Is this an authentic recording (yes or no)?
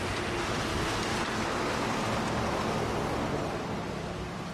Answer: yes